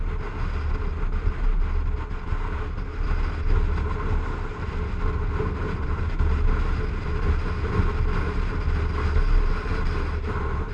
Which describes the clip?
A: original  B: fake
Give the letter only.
A